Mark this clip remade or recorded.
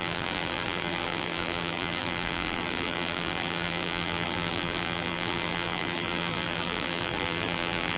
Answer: remade